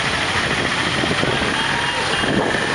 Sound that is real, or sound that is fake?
real